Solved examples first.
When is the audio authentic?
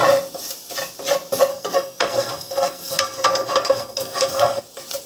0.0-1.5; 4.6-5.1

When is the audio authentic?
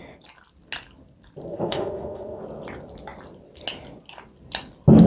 0.0-1.5; 2.4-5.1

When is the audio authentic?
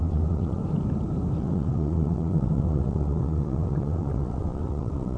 0.6-1.4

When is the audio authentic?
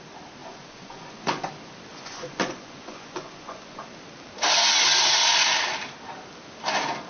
0.0-0.4; 1.5-1.9; 3.8-7.1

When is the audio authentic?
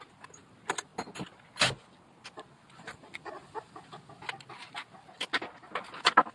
0.0-6.3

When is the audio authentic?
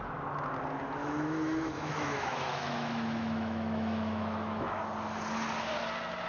0.0-1.0; 4.8-6.3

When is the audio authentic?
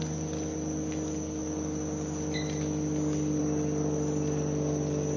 0.0-5.2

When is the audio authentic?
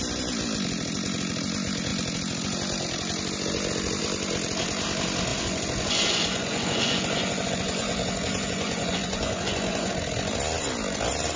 0.0-5.3; 9.9-11.4